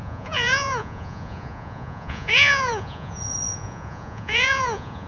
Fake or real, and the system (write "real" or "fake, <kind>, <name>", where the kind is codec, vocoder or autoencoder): fake, vocoder, Vocos